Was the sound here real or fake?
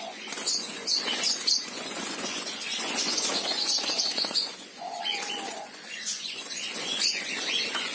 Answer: fake